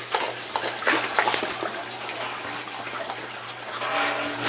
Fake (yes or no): no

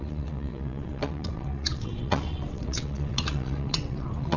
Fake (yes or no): yes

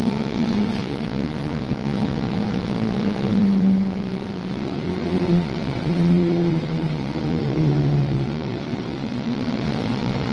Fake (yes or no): yes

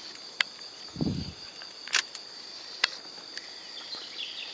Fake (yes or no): no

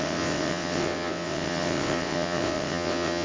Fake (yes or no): yes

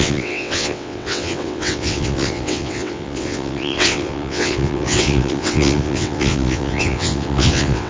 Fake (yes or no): yes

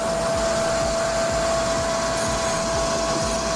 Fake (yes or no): no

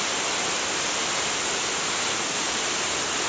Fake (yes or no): no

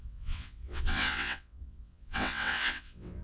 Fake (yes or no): yes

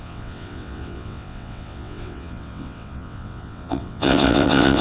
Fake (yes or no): yes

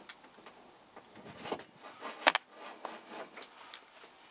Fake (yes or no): no